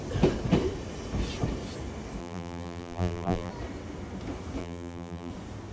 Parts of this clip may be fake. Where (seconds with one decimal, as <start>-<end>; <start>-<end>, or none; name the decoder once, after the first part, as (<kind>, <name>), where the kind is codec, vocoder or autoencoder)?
2.2-3.5 (vocoder, BigVGAN v2); 4.6-5.3